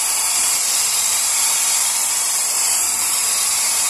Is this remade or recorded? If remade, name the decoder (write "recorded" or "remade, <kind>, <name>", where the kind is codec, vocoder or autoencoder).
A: remade, vocoder, BigVGAN v2